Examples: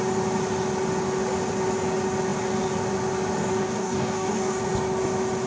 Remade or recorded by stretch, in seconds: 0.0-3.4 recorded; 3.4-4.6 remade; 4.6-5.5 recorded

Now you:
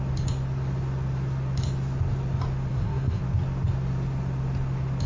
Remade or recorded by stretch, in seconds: 0.0-2.7 recorded; 2.7-3.2 remade; 3.2-5.1 recorded

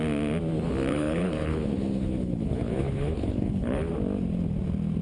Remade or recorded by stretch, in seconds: 0.0-0.9 recorded; 0.9-3.9 remade; 3.9-5.0 recorded

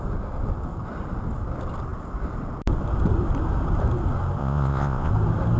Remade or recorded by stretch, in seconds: 0.0-4.4 recorded; 4.4-5.1 remade; 5.1-5.6 recorded